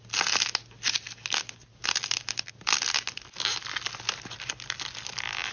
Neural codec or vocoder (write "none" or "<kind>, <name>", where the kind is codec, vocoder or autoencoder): none